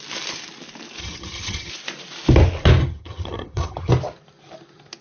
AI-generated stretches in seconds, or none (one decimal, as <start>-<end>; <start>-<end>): 1.0-1.7; 2.8-3.9